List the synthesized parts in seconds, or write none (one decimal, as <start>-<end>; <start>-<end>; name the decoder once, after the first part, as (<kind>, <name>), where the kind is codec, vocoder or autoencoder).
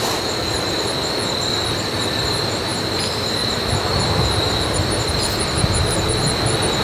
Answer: 2.7-5.1 (vocoder, BigVGAN v2)